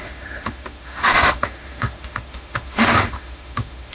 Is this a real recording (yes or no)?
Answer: no